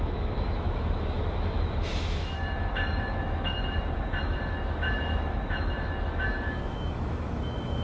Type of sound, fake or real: fake